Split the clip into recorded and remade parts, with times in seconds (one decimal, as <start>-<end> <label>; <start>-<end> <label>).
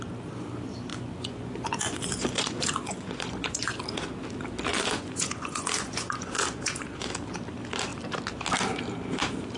0.0-0.9 recorded; 0.9-3.7 remade; 3.7-4.7 recorded; 4.7-7.1 remade; 7.1-9.6 recorded